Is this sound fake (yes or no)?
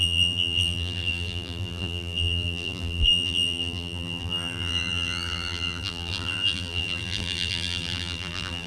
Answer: yes